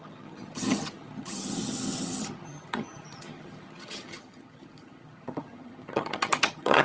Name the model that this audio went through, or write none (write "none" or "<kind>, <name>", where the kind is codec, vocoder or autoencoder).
vocoder, HiFi-GAN